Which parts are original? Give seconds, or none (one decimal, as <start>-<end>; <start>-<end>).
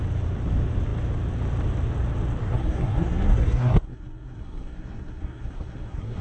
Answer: 0.0-2.4